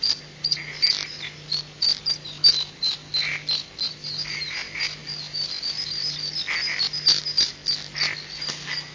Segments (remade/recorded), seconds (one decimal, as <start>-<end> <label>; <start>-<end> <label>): 0.0-8.9 recorded